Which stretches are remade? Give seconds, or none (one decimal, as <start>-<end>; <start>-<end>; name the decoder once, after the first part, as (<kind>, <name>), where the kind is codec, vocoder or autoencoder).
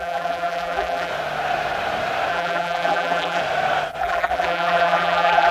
0.0-1.1 (vocoder, BigVGAN v2); 2.3-3.4; 4.0-5.5